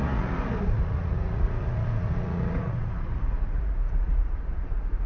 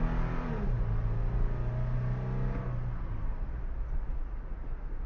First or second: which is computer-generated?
first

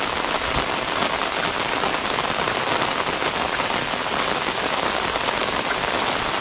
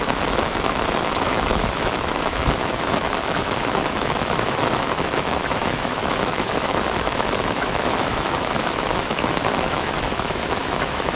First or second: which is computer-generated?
second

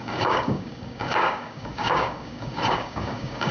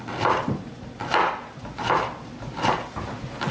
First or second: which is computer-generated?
first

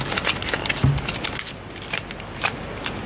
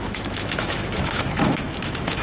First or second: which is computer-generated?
second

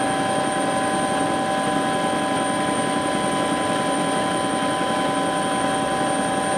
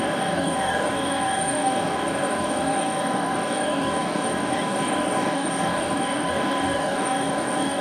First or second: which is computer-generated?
second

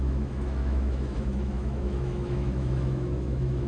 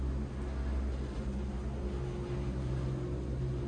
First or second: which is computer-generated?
first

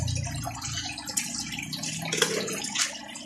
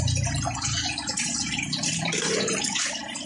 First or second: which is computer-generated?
second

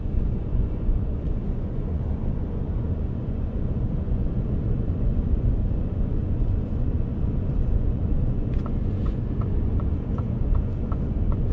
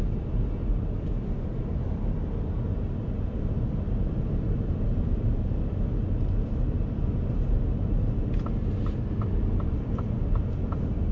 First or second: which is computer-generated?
first